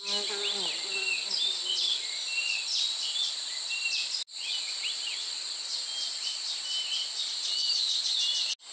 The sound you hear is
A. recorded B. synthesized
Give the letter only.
A